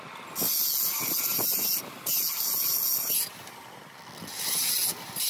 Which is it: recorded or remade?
recorded